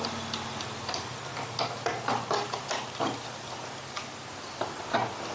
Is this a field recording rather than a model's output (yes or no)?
yes